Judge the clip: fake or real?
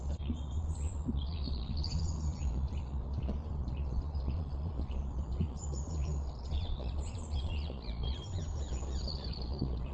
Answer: fake